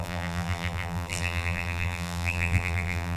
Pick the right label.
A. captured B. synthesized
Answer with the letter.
B